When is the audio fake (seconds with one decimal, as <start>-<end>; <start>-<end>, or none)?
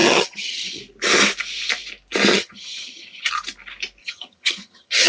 0.0-0.8; 2.3-3.3; 4.0-5.1